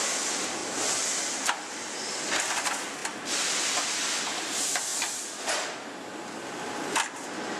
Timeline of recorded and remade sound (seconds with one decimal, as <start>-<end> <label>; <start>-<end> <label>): 0.0-7.6 recorded